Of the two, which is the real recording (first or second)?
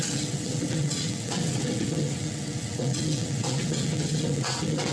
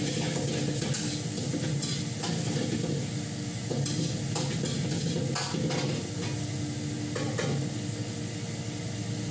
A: second